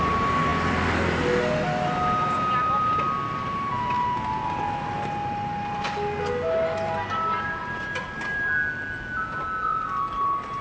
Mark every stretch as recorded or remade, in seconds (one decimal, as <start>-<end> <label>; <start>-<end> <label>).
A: 0.0-10.6 recorded